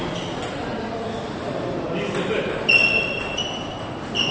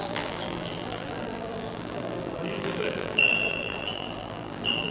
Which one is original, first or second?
first